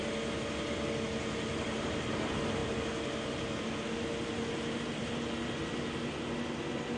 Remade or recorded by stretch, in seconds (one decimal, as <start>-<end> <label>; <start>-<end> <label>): 0.0-7.0 recorded